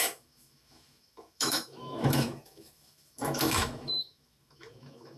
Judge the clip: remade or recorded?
remade